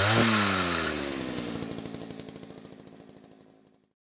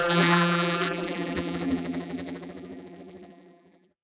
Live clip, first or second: first